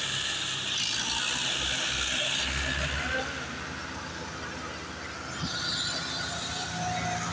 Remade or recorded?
recorded